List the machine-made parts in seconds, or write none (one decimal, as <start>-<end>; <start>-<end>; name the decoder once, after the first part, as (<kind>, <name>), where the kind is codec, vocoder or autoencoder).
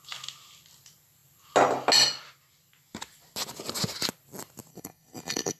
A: 4.7-5.6 (codec, SNAC)